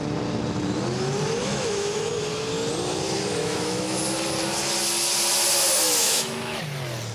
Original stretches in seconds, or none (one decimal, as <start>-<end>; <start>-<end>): 0.0-1.4; 2.1-3.4; 4.0-6.0; 6.6-7.1